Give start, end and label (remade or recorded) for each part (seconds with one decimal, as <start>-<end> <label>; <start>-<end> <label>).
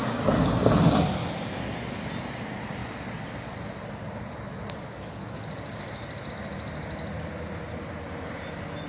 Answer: 0.0-8.9 recorded